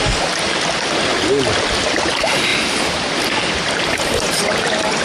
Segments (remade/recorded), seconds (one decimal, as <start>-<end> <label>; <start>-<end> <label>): 0.0-1.1 remade; 1.1-2.0 recorded; 2.0-2.5 remade; 2.5-3.7 recorded; 3.7-5.0 remade

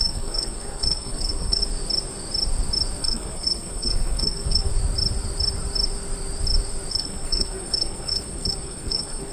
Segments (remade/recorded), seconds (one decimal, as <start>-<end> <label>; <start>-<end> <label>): 0.0-1.6 remade; 1.6-3.0 recorded; 3.0-4.7 remade; 4.7-6.9 recorded; 6.9-9.3 remade

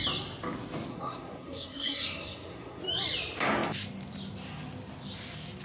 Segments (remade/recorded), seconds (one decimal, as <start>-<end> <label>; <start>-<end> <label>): 0.0-0.9 recorded; 0.9-2.8 remade; 2.8-5.6 recorded